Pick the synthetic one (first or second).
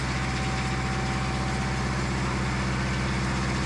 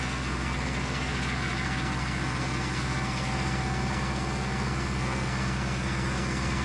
second